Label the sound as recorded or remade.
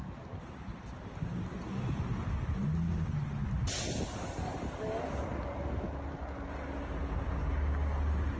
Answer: recorded